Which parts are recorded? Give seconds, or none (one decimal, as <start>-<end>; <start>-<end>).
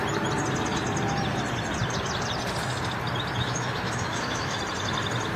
0.0-3.4; 4.6-5.4